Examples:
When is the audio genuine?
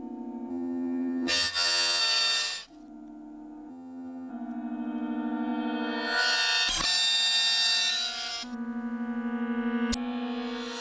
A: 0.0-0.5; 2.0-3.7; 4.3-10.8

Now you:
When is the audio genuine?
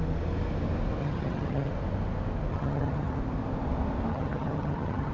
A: 0.0-1.0; 1.7-2.5; 3.2-4.1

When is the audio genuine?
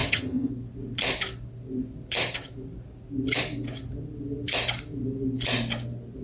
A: 0.5-6.2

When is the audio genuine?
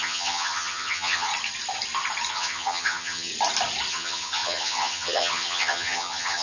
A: 1.3-2.3; 3.3-3.9